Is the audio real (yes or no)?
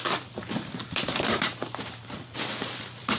no